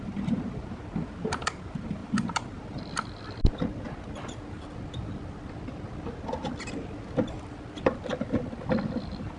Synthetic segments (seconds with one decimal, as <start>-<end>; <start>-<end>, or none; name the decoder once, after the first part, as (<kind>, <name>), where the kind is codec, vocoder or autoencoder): none